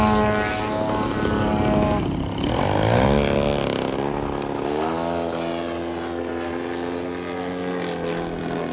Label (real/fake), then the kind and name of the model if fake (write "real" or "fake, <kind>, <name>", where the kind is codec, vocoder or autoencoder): real